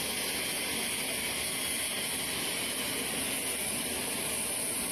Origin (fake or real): real